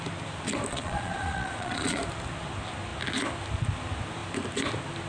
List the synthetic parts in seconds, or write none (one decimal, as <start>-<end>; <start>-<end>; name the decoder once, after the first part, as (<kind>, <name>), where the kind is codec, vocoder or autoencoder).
0.7-2.0 (vocoder, Vocos)